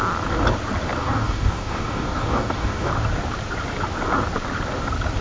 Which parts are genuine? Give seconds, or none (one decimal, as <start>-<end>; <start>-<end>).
0.0-1.0; 2.9-5.2